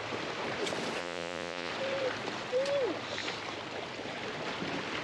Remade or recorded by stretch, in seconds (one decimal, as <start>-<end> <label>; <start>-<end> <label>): 0.0-1.0 recorded; 1.0-1.7 remade; 1.7-5.0 recorded